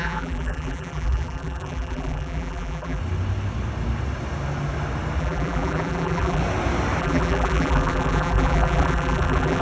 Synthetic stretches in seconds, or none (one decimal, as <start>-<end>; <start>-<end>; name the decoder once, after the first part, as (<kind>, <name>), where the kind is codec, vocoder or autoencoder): 0.0-3.0 (vocoder, BigVGAN v2); 5.2-6.4; 7.0-9.6